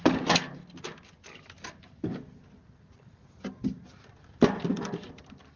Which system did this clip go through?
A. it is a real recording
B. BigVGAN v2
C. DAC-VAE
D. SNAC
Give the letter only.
A